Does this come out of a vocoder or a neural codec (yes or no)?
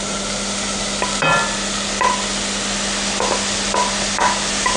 no